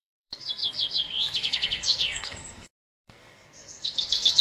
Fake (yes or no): yes